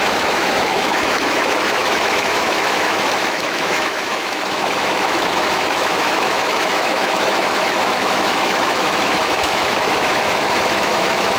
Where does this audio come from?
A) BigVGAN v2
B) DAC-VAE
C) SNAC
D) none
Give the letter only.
B